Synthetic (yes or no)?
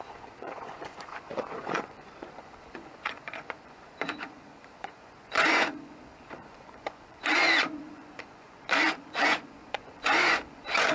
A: yes